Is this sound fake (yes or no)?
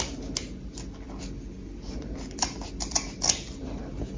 no